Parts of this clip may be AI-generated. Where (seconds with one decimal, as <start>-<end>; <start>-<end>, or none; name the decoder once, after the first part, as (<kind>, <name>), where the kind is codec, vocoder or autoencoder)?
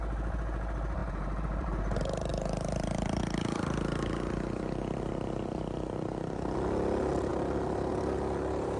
1.0-1.8 (vocoder, BigVGAN v2); 2.3-3.2